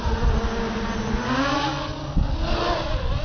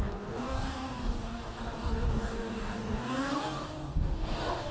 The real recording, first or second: first